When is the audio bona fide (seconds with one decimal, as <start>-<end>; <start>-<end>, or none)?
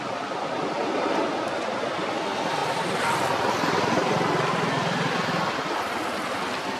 0.0-6.8